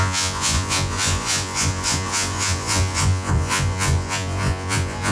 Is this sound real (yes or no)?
no